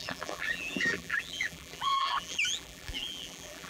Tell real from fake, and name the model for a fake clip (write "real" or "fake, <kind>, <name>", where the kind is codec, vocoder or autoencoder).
fake, vocoder, BigVGAN v2